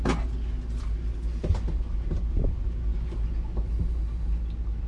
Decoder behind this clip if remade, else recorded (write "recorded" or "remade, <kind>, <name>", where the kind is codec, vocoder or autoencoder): recorded